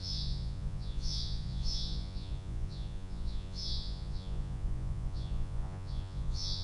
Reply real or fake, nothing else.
fake